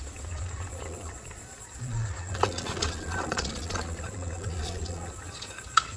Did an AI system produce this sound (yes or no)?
yes